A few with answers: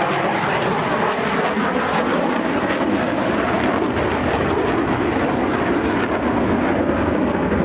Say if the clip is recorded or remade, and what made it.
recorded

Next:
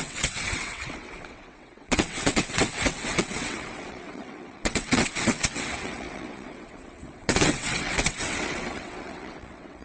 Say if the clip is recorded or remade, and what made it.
remade, vocoder, WaveNeXt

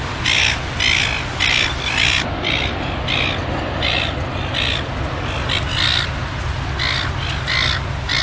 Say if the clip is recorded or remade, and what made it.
recorded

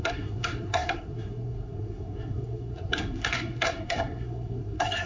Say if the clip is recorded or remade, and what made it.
remade, codec, SNAC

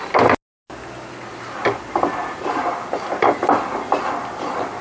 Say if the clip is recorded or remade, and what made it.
recorded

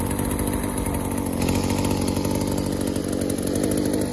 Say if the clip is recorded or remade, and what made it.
recorded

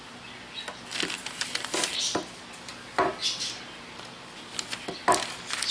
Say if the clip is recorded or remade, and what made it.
recorded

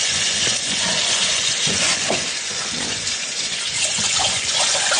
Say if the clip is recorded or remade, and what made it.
remade, vocoder, Vocos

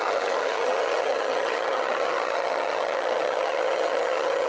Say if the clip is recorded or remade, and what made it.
remade, vocoder, HiFi-GAN